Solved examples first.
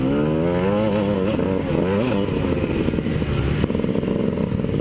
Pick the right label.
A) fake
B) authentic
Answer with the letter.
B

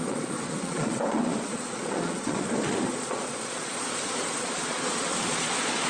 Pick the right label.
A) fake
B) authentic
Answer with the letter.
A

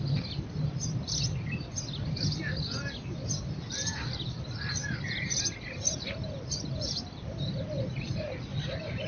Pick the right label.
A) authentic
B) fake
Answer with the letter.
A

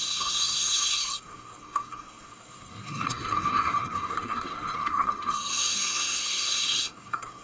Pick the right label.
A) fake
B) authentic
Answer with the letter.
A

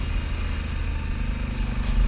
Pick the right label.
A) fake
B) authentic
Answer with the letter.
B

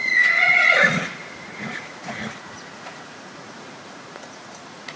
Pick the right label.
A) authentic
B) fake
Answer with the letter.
B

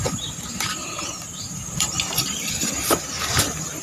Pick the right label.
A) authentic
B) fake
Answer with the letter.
B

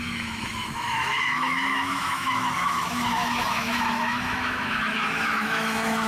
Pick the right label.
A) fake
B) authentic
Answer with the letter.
A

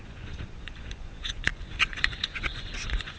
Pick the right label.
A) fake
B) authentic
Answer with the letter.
A